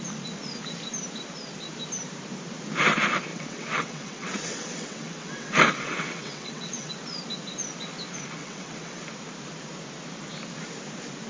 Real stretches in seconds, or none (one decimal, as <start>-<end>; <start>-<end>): 0.0-3.3; 6.9-8.4; 9.0-11.3